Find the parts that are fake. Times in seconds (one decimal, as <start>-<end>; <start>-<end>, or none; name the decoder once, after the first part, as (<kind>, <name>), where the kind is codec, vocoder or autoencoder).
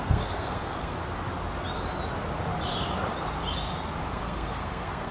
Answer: 0.0-1.0 (codec, SNAC); 4.1-5.1